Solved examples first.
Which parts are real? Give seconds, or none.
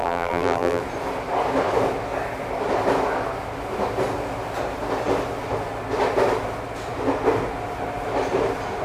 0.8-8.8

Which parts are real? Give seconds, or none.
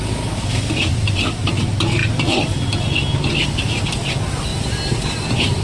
0.0-5.6